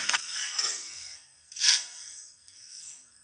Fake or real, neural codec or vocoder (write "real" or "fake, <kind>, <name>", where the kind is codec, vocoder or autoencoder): fake, codec, SNAC